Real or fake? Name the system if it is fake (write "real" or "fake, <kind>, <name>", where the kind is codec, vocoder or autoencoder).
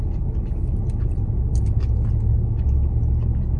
real